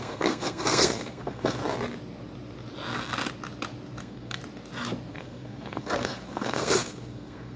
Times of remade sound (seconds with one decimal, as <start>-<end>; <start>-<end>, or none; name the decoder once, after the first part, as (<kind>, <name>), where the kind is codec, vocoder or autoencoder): 0.0-1.6 (codec, SNAC); 4.0-4.4; 5.1-7.6

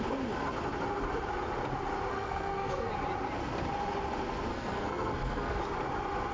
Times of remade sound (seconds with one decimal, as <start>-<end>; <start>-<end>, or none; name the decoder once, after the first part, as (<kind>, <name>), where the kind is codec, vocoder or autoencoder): 2.1-2.9 (codec, SNAC); 4.5-5.6

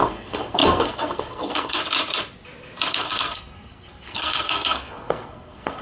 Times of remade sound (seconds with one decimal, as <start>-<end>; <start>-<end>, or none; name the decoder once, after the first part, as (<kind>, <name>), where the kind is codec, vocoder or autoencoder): 0.0-1.8 (codec, SNAC); 2.9-5.8

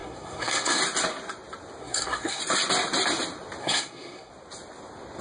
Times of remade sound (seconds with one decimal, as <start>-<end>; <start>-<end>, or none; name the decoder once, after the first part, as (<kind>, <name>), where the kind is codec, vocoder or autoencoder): 0.0-0.8 (codec, SNAC); 1.8-2.4; 3.6-4.3